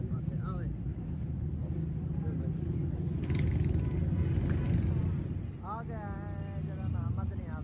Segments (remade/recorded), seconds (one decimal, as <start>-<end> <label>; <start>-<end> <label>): 0.0-7.6 recorded